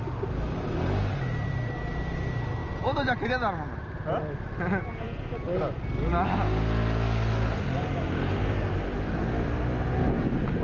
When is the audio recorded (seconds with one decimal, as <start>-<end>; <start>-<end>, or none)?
0.0-10.6